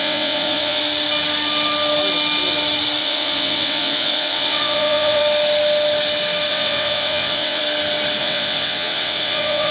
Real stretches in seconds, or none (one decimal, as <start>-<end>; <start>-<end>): 0.8-3.0; 5.2-6.5; 7.6-8.2